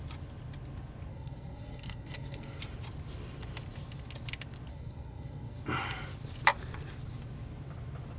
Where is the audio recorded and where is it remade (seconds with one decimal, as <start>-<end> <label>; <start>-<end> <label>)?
0.0-1.1 recorded; 1.1-2.6 remade; 2.6-4.7 recorded; 4.7-5.6 remade; 5.6-8.2 recorded